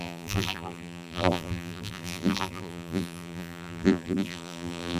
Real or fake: fake